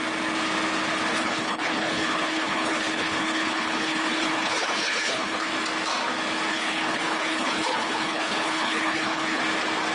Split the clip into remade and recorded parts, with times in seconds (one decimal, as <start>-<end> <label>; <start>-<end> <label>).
0.0-1.1 recorded; 1.1-5.5 remade; 5.5-6.5 recorded; 6.5-9.4 remade; 9.4-9.9 recorded